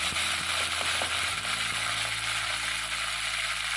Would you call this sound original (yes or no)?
yes